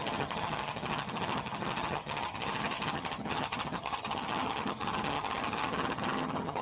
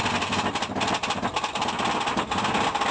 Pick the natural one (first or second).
second